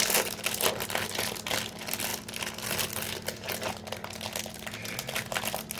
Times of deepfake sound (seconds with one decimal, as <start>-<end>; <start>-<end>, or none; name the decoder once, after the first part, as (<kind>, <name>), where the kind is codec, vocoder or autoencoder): none